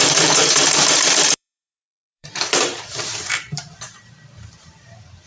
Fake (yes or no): yes